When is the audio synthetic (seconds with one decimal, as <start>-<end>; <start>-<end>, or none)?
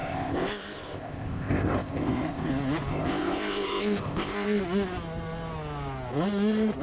0.0-2.5; 2.9-4.6